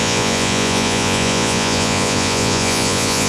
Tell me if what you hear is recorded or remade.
remade